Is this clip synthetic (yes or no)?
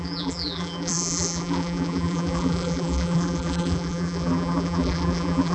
yes